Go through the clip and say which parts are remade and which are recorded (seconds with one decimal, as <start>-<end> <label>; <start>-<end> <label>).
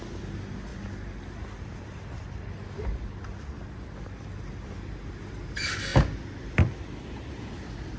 0.0-8.0 recorded